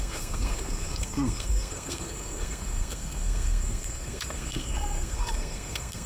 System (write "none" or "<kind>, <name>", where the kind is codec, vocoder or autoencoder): codec, SNAC